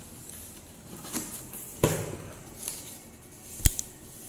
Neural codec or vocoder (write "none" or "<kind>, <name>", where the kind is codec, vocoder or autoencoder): none